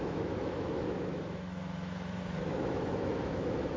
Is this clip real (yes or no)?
no